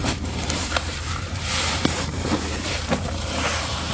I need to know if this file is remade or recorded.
remade